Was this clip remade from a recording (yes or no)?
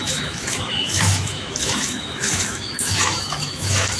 yes